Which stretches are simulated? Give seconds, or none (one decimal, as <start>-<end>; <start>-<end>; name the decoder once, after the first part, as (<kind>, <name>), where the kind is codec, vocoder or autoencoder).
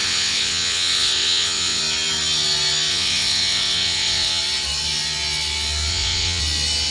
0.0-1.8 (vocoder, WaveNeXt); 2.9-4.4; 5.9-6.4